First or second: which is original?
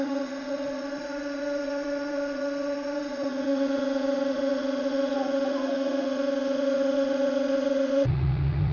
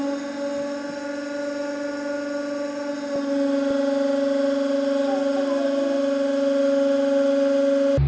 second